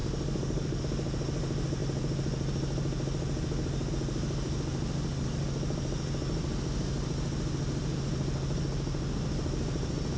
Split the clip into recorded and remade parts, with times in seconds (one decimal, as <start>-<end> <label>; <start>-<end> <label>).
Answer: 0.0-0.8 remade; 0.8-10.2 recorded